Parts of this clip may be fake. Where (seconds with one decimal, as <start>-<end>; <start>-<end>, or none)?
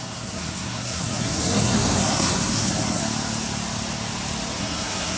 0.0-3.0; 4.6-5.2